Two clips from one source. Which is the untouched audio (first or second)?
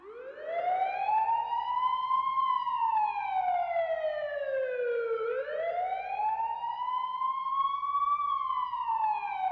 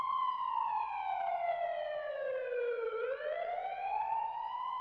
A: first